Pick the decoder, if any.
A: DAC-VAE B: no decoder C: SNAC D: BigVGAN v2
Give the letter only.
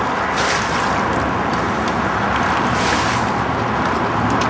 B